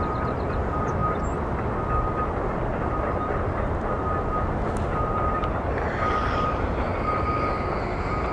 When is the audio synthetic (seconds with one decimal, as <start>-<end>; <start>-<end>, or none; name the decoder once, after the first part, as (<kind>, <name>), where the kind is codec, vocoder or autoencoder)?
none